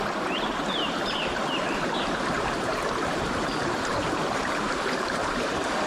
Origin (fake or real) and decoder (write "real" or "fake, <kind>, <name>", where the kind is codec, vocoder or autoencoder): fake, vocoder, BigVGAN v2